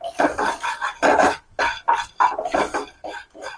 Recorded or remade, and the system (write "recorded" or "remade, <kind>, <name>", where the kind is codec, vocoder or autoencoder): recorded